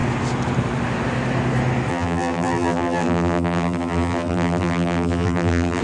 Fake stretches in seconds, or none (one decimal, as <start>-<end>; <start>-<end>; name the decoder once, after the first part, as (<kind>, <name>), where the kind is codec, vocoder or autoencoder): 1.9-5.8 (vocoder, BigVGAN v2)